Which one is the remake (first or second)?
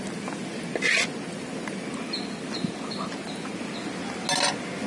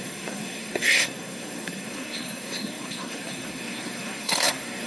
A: second